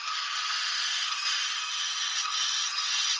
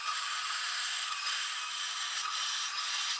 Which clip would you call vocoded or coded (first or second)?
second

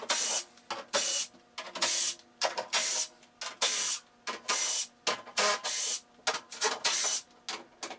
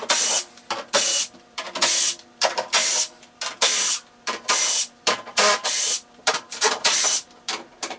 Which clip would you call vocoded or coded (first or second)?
second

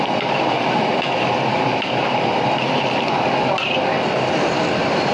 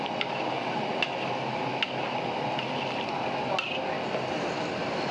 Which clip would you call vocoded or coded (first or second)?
first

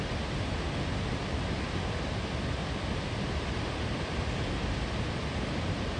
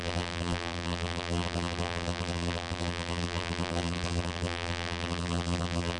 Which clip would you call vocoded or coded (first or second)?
second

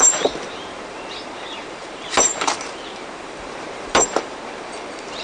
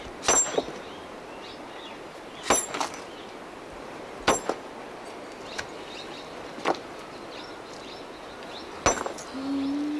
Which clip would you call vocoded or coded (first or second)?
first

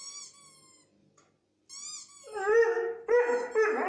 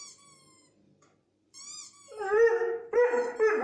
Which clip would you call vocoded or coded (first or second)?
second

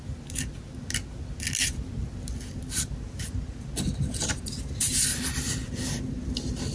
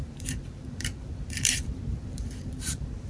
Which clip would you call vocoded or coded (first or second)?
second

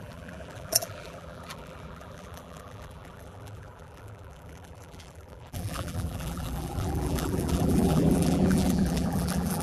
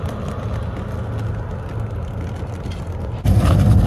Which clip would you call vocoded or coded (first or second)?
first